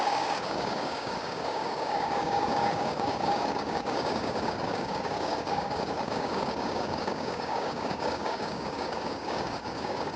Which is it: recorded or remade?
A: remade